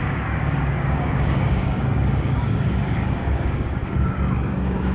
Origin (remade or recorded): remade